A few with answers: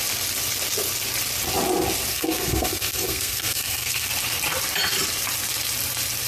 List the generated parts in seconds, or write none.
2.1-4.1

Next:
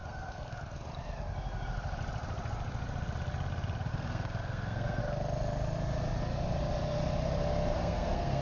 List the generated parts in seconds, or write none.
0.0-0.6; 3.9-5.0; 7.7-8.4

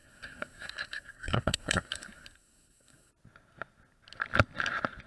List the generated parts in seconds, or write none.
0.0-3.1

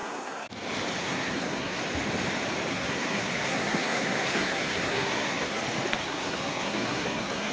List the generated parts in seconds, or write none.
0.0-0.5; 1.0-1.8; 2.7-5.6; 6.0-7.5

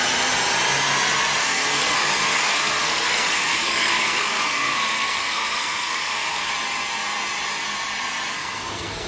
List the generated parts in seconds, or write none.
1.4-6.5; 8.3-9.1

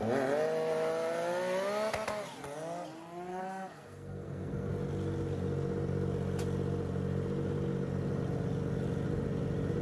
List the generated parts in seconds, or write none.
3.3-4.7

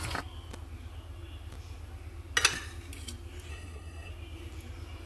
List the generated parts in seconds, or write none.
3.5-4.1